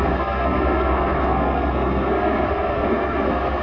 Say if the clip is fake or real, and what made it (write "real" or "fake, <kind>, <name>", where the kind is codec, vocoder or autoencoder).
fake, codec, SNAC